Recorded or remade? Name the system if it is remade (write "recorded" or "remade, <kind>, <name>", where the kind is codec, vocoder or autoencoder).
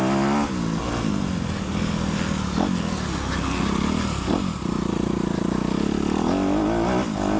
recorded